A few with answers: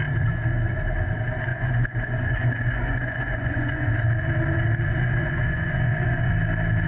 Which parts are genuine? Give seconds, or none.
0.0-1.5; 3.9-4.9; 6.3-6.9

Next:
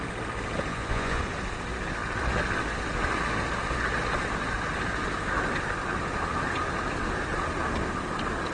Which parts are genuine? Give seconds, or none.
0.0-0.7; 1.2-8.5

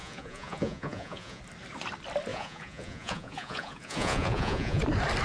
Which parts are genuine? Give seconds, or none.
1.4-2.3; 4.8-5.2

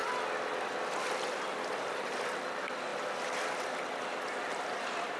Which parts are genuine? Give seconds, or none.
0.0-5.2

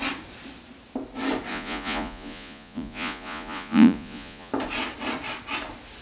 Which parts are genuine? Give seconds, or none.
0.0-1.5; 4.5-6.0

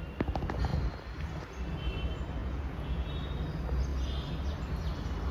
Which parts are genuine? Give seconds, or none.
0.0-2.4; 3.1-5.3

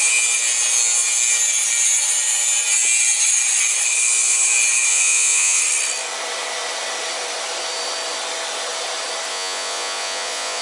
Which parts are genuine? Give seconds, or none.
0.0-4.9; 5.6-9.3